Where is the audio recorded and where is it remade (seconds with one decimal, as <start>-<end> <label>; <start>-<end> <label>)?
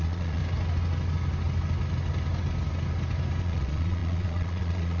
0.0-0.4 remade; 0.4-3.4 recorded; 3.4-5.0 remade